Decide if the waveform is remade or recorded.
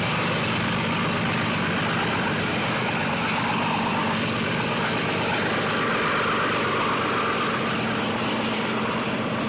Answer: recorded